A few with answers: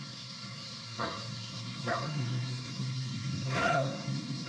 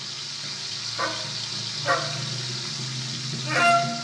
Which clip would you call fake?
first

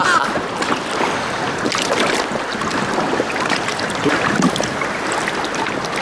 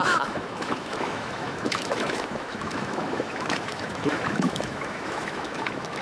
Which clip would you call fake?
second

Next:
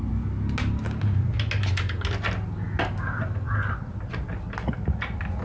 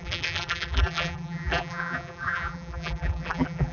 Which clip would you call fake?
second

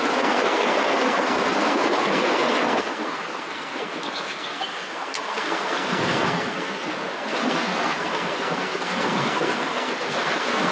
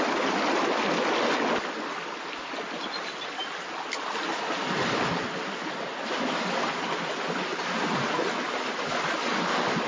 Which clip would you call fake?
first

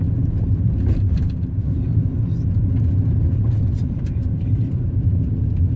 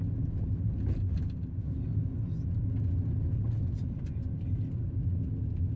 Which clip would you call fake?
first